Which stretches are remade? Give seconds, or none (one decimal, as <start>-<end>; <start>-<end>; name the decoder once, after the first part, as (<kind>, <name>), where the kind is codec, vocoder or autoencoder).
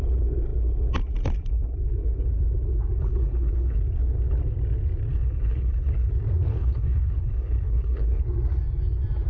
3.0-3.8 (codec, HILCodec); 5.1-6.1; 6.5-8.2